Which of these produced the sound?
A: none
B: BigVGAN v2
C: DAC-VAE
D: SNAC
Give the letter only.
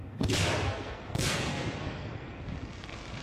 D